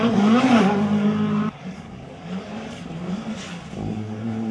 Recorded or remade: remade